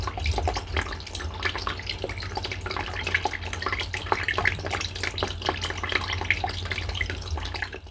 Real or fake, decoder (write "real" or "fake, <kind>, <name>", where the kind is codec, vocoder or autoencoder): real